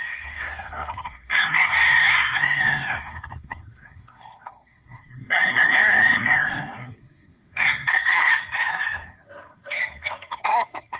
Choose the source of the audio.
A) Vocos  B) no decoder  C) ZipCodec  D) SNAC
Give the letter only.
D